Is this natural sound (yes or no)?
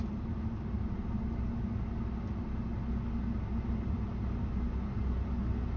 yes